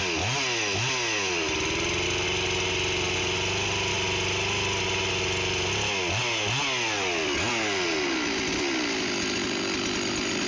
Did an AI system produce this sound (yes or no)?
no